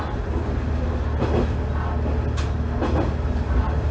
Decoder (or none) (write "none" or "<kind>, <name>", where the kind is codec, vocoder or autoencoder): none